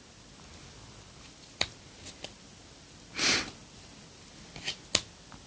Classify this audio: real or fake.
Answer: real